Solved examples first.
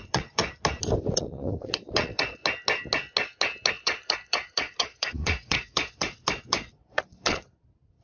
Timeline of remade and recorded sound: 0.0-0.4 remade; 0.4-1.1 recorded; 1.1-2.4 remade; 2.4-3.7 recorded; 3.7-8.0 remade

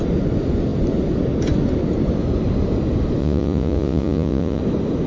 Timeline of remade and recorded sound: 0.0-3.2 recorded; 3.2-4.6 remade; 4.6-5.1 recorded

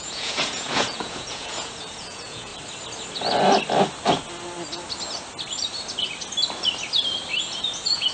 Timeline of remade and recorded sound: 0.0-2.5 remade; 2.5-7.4 recorded; 7.4-8.1 remade

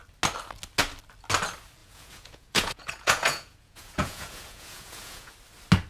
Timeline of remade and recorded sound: 0.0-1.8 recorded; 1.8-5.3 remade; 5.3-5.9 recorded

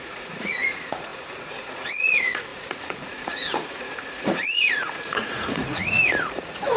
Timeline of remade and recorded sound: 0.0-6.8 remade

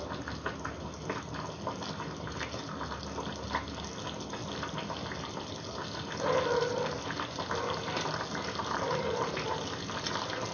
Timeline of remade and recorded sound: 0.0-10.5 recorded

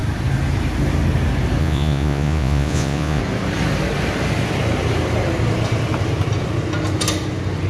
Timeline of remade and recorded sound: 0.0-1.6 recorded; 1.6-3.2 remade; 3.2-7.7 recorded